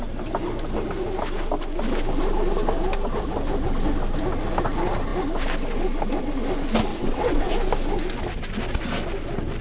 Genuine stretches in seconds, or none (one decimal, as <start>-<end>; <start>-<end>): 0.0-6.9; 7.5-9.6